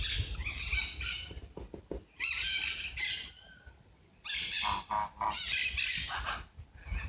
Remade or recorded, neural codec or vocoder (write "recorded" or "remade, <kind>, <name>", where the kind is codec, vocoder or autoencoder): recorded